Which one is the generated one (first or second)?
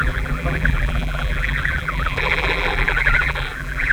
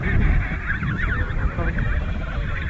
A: first